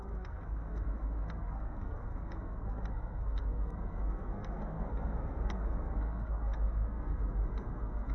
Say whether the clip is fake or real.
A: fake